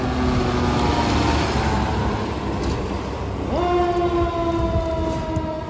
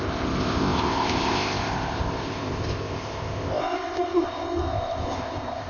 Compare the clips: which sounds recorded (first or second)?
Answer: first